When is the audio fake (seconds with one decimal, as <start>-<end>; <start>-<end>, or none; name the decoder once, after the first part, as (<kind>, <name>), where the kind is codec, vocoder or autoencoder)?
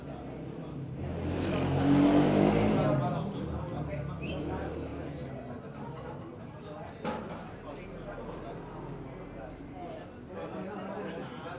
none